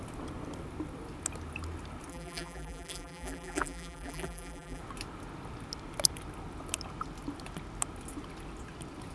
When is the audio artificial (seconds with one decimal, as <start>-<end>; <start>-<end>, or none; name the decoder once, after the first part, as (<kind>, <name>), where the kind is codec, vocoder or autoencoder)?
2.1-4.8 (vocoder, BigVGAN v2)